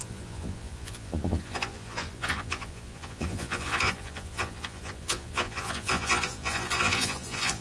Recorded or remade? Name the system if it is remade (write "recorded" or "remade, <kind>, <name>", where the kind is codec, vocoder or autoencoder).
remade, vocoder, Vocos